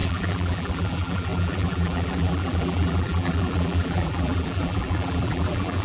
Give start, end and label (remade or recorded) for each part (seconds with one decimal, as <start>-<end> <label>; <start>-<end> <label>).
0.0-5.8 remade